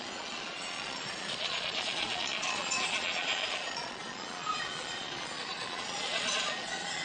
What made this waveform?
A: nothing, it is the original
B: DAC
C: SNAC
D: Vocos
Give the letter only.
D